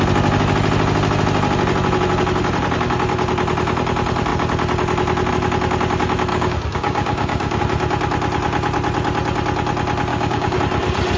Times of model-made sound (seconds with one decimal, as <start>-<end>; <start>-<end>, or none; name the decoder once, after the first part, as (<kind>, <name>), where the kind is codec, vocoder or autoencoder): 6.3-7.6 (codec, DAC); 10.1-10.6